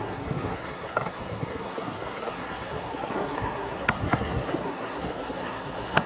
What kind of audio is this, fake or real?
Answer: fake